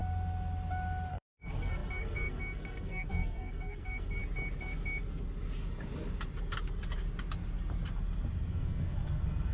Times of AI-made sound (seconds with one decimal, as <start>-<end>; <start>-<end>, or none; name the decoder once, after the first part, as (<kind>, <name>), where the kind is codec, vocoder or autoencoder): 1.1-4.2 (codec, SNAC); 8.5-9.5